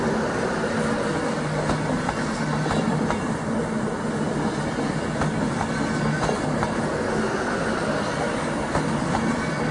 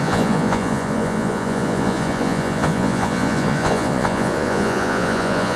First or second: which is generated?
second